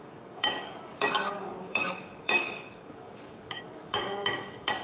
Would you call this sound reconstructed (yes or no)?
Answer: yes